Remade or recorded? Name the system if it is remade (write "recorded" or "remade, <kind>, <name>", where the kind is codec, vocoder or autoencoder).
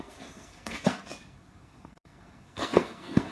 remade, codec, SNAC